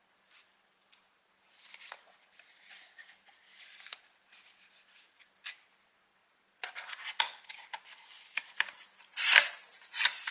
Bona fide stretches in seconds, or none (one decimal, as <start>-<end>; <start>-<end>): 0.0-10.3